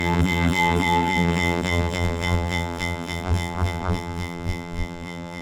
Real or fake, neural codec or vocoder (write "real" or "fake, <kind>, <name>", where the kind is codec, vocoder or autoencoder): fake, vocoder, BigVGAN v2